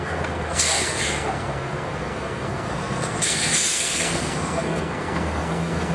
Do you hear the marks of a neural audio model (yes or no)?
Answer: yes